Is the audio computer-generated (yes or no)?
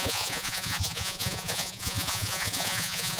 yes